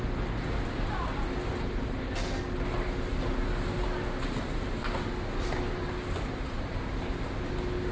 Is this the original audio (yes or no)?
yes